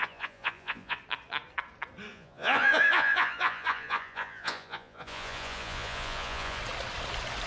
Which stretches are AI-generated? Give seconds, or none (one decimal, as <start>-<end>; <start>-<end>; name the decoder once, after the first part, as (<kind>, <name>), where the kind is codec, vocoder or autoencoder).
0.0-1.0 (vocoder, Vocos); 2.1-6.6